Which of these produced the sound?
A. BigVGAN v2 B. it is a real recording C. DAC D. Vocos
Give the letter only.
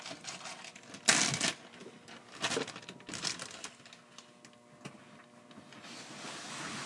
B